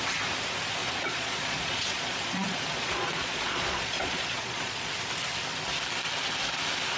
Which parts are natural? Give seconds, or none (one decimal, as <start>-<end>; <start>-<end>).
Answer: 0.0-0.8; 4.9-7.0